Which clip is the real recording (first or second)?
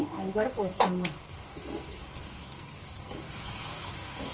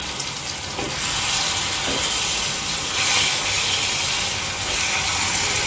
second